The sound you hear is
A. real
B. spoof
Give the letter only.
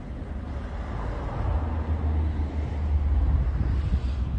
A